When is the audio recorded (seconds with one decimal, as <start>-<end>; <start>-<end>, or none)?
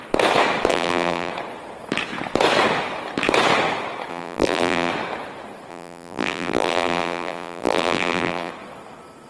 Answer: 0.0-0.7; 1.3-4.1; 4.9-5.7; 8.5-9.3